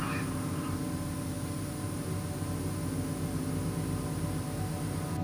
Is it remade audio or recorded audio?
recorded